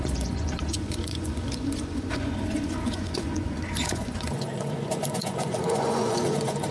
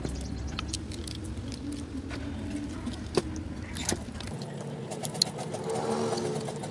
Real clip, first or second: second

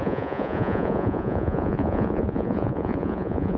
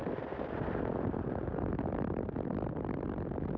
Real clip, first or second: second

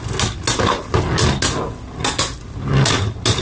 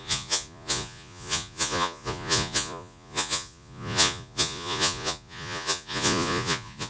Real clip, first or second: first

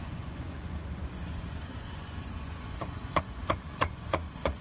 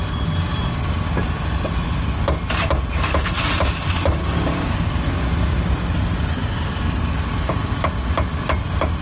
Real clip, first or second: second